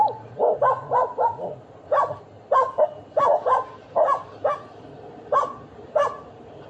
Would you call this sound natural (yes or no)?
yes